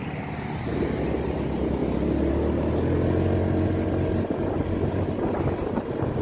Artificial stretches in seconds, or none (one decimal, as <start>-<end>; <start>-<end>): none